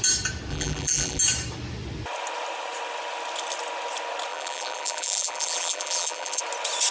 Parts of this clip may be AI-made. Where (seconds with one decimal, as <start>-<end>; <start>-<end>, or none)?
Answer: 0.5-1.2; 4.3-6.4